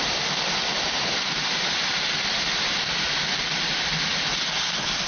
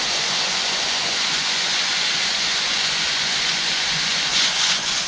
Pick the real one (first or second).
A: first